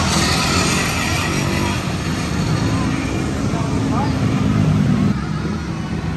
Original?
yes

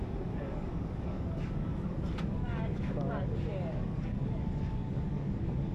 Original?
no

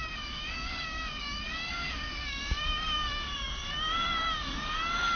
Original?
no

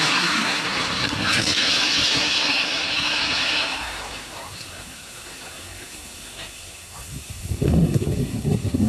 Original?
no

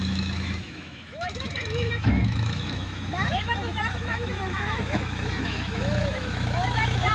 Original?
no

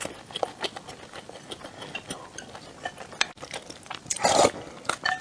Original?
yes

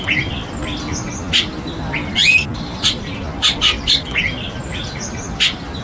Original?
yes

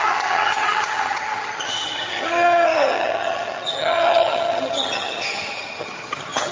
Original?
no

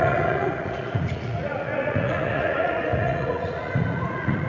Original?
no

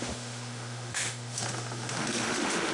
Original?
no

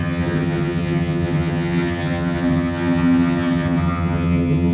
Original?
no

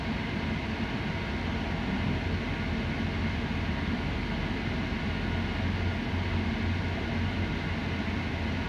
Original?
yes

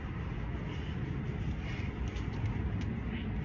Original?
yes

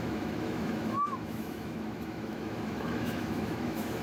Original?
no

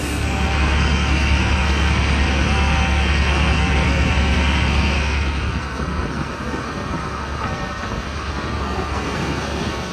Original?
no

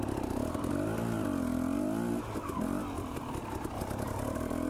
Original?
yes